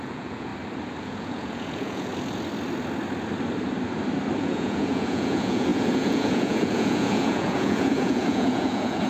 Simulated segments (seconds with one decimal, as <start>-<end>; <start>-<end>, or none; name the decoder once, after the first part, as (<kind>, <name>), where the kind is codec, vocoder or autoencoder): 0.0-0.5 (vocoder, Vocos); 1.0-2.1; 4.4-9.1